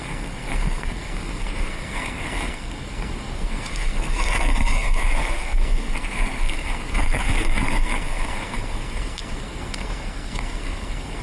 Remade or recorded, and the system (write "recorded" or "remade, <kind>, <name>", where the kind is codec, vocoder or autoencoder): remade, codec, SNAC